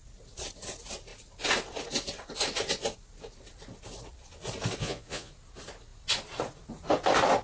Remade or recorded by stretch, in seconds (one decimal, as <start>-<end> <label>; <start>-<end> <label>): 0.0-4.8 recorded; 4.8-5.3 remade; 5.3-7.4 recorded